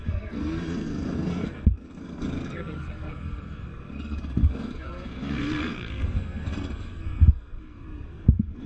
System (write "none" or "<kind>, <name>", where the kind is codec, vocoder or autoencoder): codec, SNAC